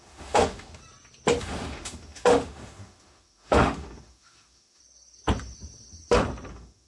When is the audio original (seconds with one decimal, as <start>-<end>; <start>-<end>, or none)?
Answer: 0.8-1.4; 4.8-6.5